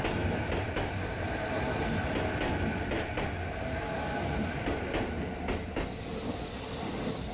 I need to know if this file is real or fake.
real